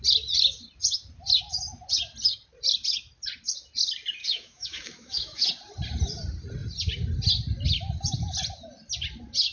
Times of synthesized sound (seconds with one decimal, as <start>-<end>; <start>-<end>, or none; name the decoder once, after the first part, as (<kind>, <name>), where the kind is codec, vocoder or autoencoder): 4.2-5.5 (autoencoder, DAC-VAE)